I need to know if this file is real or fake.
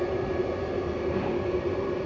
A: real